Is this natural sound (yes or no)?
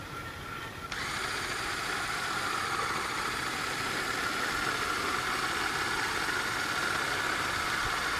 yes